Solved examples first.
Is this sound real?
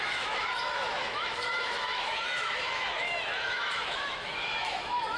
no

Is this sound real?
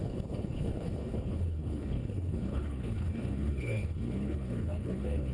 no